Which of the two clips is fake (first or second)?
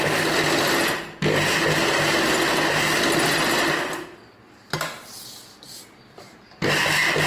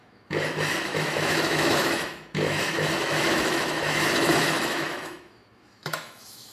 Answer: second